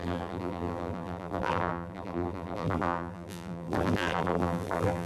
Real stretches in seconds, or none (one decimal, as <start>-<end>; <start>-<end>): none